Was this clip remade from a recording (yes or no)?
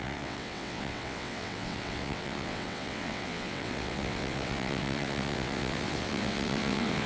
yes